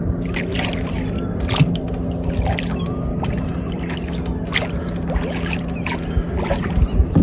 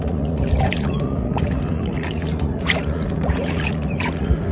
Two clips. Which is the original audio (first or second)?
first